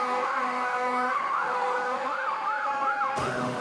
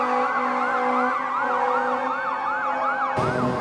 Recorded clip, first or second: second